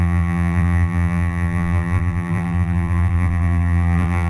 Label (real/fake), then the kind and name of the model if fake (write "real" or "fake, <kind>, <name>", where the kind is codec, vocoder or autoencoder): fake, vocoder, BigVGAN v2